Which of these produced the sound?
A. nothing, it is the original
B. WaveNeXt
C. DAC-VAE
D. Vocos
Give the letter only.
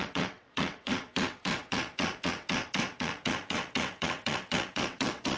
B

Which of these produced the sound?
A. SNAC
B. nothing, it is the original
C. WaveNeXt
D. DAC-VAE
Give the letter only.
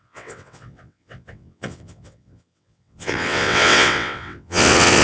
C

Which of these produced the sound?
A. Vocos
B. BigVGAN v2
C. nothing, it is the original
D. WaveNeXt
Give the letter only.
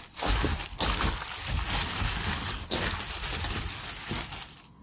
C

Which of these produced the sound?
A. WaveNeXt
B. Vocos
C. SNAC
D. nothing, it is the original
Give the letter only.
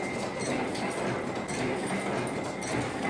D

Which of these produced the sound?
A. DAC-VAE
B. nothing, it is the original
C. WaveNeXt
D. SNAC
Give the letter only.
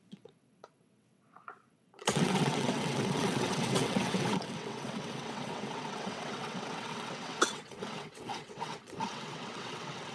C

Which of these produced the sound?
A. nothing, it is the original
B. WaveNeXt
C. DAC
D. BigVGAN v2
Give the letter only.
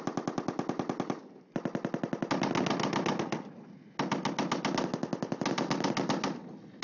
A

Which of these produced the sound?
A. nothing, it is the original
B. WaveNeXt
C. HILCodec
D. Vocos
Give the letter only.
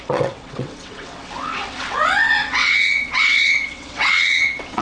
B